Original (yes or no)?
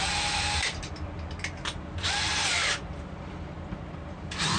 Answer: no